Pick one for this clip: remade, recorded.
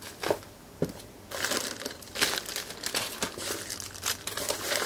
recorded